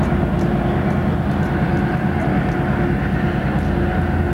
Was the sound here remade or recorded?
recorded